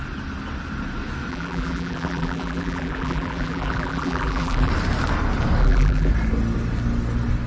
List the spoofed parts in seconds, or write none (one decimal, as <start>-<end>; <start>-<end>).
1.3-4.7; 5.6-6.1